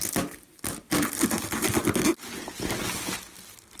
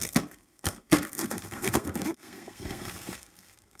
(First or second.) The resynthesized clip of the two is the second